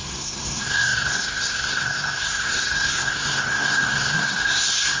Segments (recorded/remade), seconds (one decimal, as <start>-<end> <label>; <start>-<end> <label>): 0.0-5.0 remade